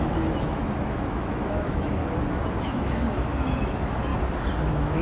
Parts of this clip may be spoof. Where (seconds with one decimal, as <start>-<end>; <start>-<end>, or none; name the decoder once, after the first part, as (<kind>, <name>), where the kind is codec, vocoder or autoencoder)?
0.0-2.0 (autoencoder, DAC-VAE); 2.6-4.1; 4.6-5.0